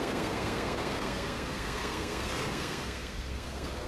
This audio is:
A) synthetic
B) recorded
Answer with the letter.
A